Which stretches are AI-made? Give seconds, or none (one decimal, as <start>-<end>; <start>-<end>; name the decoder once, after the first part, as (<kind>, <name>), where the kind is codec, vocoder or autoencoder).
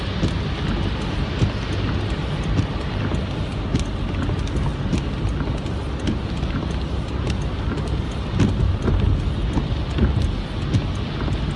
none